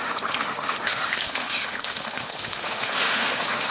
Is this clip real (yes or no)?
no